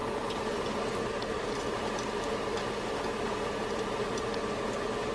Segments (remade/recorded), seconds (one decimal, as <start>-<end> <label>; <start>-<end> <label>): 0.0-5.1 recorded